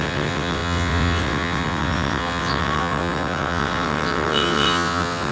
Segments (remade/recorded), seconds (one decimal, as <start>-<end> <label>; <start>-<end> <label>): 0.0-5.3 remade